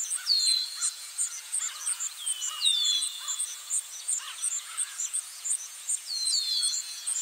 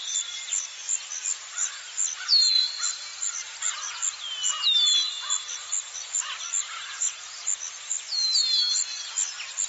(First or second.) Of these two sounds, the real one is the second